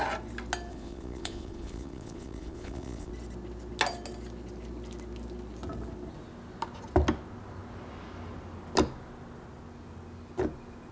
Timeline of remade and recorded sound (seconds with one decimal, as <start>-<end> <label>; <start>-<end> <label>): 0.0-0.7 recorded; 0.7-3.1 remade; 3.1-10.9 recorded